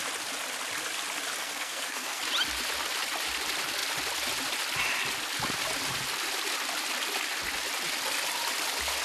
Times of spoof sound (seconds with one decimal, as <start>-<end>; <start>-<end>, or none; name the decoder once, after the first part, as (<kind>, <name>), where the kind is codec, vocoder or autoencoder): 1.4-2.2 (codec, SNAC)